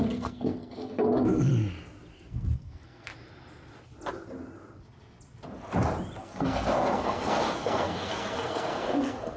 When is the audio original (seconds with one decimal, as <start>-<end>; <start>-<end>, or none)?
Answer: 1.5-2.1; 3.1-6.2